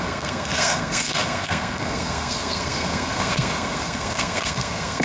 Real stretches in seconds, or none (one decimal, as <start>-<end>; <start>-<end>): none